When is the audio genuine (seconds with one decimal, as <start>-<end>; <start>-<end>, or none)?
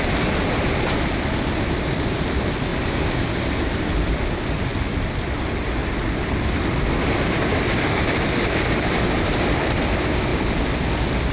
2.7-3.9